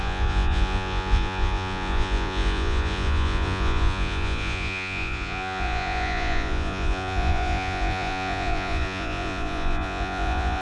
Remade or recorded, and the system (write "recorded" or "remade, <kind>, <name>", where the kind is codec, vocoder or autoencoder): remade, vocoder, Vocos